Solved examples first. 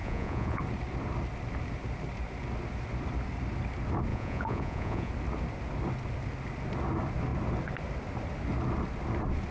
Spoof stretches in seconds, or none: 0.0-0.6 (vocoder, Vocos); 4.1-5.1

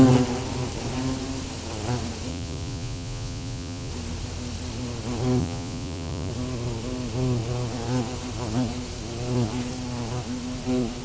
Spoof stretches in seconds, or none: 2.3-3.9 (vocoder, Vocos); 5.4-6.3